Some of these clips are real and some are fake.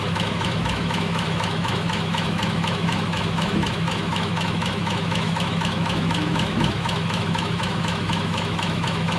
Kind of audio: fake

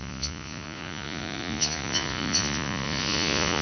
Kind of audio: fake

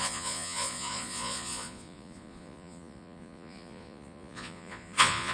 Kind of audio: fake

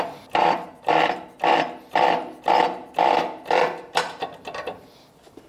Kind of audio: fake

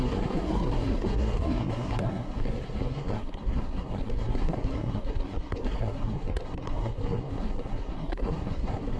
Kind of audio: fake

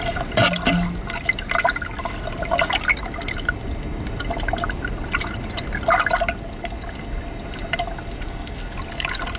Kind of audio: real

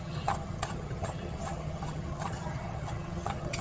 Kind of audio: fake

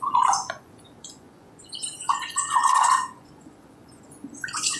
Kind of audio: fake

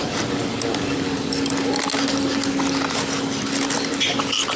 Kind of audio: real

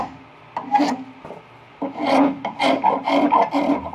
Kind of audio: real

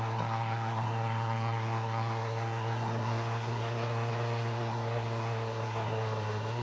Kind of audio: fake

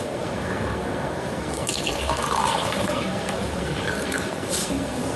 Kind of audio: fake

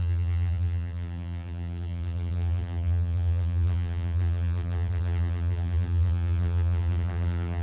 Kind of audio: fake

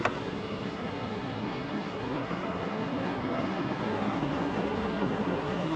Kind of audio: fake